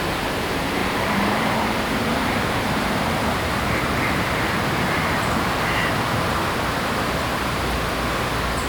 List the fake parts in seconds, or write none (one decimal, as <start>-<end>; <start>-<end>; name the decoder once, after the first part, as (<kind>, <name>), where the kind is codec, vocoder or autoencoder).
0.8-5.9 (vocoder, BigVGAN v2)